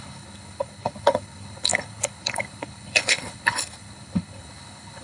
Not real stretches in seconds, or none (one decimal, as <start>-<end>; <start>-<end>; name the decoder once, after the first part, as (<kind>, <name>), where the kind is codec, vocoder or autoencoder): 0.0-5.0 (codec, HILCodec)